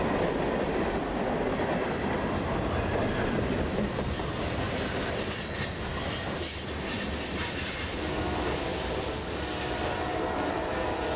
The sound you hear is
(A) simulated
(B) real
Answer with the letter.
B